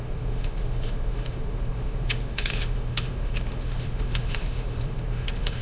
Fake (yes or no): yes